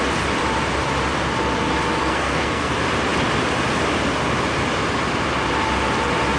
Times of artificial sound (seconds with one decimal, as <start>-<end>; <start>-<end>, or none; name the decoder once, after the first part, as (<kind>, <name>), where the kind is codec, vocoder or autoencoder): 2.0-2.7 (codec, SNAC)